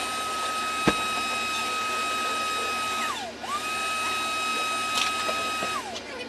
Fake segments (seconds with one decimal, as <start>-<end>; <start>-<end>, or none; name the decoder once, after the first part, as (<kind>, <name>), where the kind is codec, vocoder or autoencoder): none